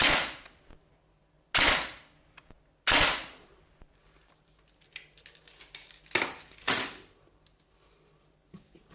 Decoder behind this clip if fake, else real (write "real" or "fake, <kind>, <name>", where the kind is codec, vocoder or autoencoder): real